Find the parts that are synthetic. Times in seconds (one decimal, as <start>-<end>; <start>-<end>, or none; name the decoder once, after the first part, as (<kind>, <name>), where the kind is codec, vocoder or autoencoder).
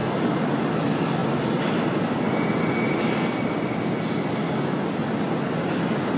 none